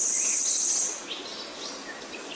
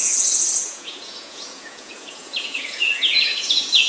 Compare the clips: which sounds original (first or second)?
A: first